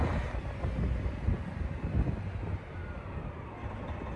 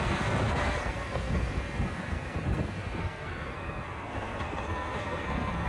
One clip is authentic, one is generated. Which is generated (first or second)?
second